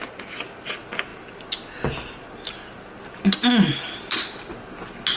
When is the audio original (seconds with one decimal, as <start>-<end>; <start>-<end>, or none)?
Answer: 0.0-5.2